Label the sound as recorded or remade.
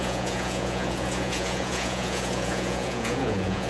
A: remade